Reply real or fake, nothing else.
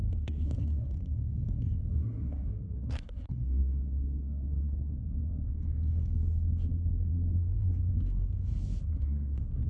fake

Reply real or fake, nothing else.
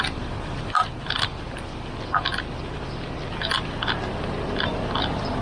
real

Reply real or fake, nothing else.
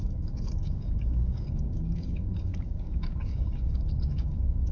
fake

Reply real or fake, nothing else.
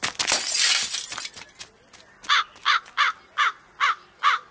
real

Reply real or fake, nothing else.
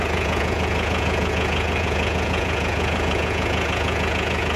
fake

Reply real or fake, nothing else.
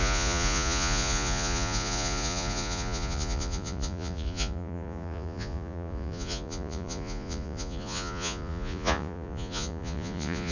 fake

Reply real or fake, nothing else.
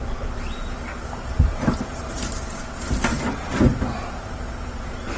fake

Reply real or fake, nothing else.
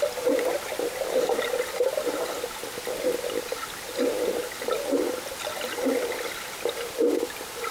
real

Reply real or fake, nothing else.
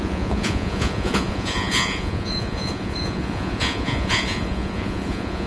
fake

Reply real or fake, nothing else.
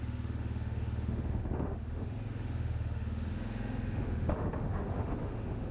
fake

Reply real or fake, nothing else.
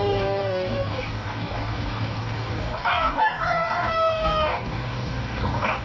fake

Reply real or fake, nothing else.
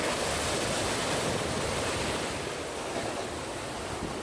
real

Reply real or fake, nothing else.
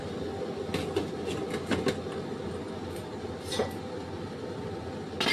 real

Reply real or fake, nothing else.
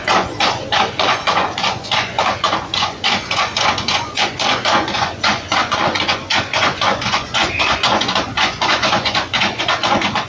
fake